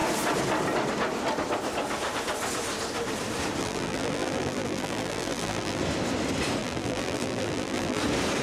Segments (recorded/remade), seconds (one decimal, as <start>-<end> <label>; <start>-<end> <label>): 0.0-3.6 recorded; 3.6-5.8 remade; 5.8-6.6 recorded; 6.6-8.0 remade; 8.0-8.4 recorded